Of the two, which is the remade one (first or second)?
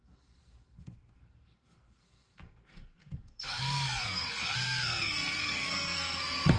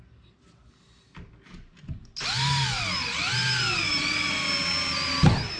first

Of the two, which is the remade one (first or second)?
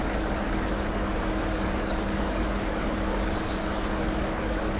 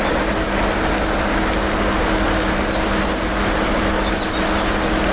first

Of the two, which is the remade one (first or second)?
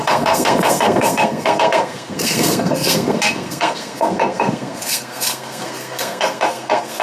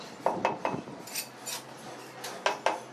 first